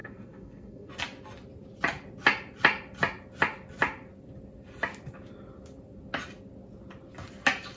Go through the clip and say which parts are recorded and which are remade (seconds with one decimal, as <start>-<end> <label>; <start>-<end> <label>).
0.0-0.9 remade; 0.9-7.8 recorded